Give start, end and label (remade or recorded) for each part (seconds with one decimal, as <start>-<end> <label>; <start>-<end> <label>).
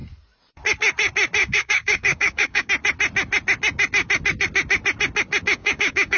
0.0-1.4 recorded; 1.4-2.7 remade; 2.7-5.6 recorded; 5.6-6.2 remade